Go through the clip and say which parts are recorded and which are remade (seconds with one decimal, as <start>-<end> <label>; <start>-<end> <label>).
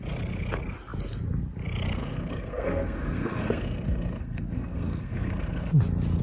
0.0-2.0 recorded; 2.0-5.7 remade; 5.7-6.2 recorded